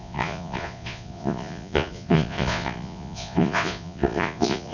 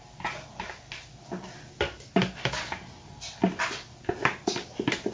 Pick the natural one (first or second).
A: second